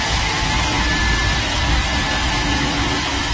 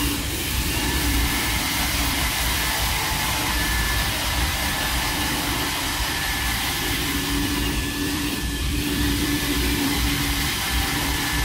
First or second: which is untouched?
first